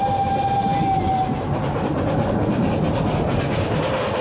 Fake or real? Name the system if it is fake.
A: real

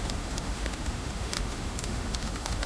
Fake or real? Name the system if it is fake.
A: fake, autoencoder, DAC-VAE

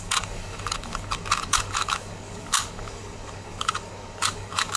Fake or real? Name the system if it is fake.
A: fake, codec, DAC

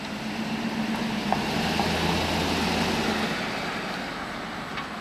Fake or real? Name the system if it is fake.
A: real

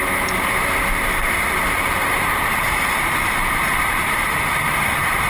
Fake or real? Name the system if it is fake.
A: fake, vocoder, BigVGAN v2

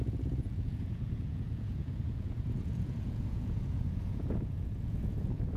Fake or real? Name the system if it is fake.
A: fake, vocoder, Vocos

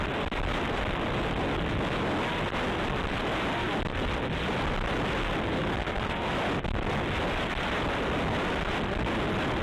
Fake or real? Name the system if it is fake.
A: real